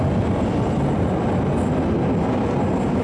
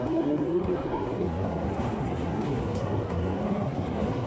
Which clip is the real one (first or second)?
first